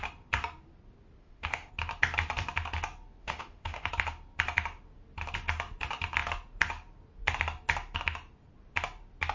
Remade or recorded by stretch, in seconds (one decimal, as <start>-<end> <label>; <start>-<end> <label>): 0.0-1.2 recorded; 1.2-1.7 remade; 1.7-3.2 recorded; 3.2-3.9 remade; 3.9-9.3 recorded